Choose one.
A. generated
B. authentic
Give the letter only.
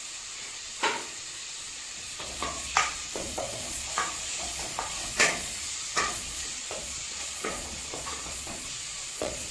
A